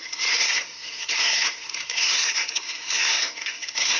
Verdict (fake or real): fake